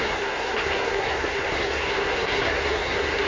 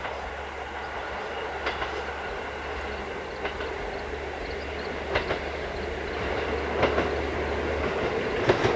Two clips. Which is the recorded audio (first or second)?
second